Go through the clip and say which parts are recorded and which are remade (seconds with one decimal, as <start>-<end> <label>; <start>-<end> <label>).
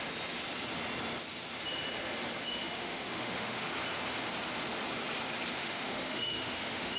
0.0-2.5 recorded; 2.5-3.7 remade; 3.7-5.6 recorded; 5.6-7.0 remade